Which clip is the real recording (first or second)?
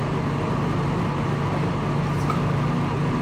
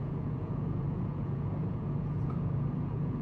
first